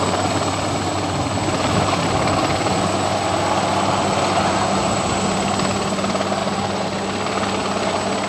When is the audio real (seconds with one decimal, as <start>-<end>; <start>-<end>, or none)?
0.0-8.3